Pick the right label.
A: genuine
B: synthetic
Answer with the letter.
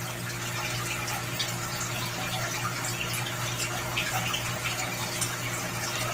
A